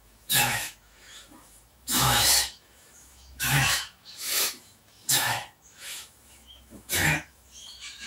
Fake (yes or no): yes